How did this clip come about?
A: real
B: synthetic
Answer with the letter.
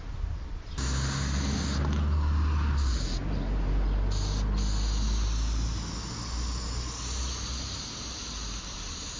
A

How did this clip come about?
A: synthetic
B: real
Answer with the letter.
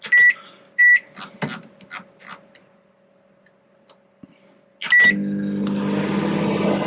B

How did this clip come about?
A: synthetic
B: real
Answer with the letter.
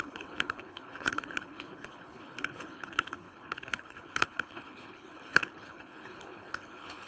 A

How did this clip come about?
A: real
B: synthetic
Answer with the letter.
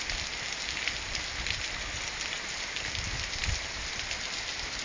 A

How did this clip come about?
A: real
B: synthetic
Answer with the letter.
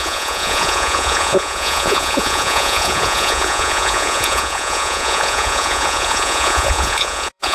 B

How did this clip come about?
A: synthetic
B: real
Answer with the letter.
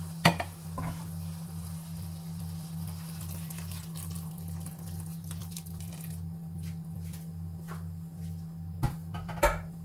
B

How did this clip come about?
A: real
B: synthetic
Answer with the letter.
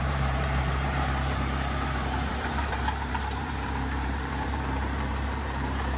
B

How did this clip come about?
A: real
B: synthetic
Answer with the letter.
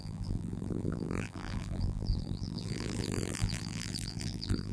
B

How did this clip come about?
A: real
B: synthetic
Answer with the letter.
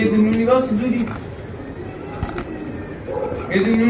A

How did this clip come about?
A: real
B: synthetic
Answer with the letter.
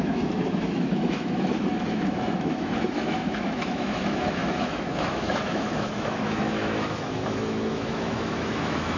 B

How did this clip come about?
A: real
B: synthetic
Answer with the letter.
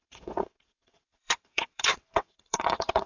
B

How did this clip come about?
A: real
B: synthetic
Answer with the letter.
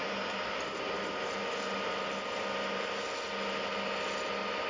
A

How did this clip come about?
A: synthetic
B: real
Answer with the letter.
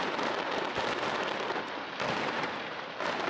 A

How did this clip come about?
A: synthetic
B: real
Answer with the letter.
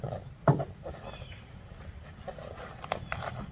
B